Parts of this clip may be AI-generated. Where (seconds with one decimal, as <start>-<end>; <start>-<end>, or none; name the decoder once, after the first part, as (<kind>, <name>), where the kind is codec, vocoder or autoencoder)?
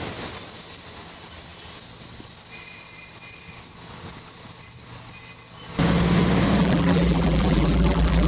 6.6-8.3 (vocoder, BigVGAN v2)